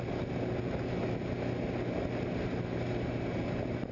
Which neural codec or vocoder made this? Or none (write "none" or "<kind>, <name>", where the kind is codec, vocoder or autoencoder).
none